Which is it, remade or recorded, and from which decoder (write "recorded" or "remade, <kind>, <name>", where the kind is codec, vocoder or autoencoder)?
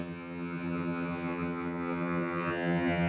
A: remade, vocoder, HiFi-GAN